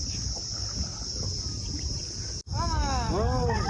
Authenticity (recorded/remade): recorded